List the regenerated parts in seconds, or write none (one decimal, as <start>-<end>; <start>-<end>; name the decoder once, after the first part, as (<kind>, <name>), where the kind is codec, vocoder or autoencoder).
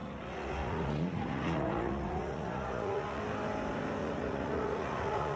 0.0-3.2 (vocoder, Vocos); 4.0-5.4